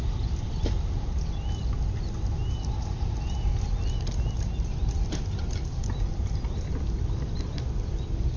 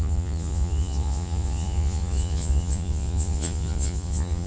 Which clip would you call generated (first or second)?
second